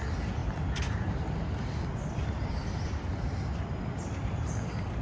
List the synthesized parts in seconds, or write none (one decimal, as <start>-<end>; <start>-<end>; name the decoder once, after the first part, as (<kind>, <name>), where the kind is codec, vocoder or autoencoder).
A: none